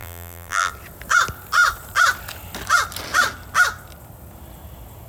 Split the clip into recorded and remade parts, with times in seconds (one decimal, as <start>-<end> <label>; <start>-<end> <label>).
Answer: 0.0-0.7 remade; 0.7-5.1 recorded